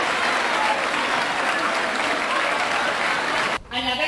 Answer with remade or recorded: recorded